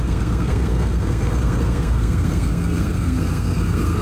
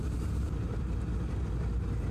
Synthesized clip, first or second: first